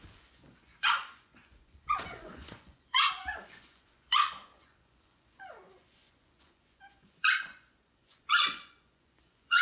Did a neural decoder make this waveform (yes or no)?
yes